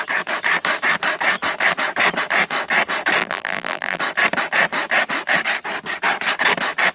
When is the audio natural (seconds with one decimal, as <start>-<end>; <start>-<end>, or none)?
0.0-3.2; 4.0-6.9